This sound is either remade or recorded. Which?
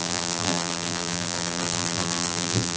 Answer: remade